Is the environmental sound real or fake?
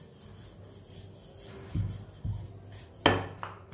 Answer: real